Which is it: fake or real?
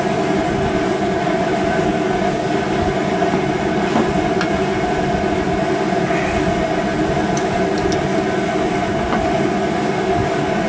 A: real